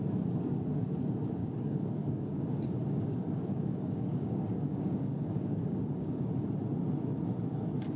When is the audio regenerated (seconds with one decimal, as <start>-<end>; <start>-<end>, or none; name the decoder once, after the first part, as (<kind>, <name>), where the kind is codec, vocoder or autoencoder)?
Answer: 1.4-6.2 (codec, DAC)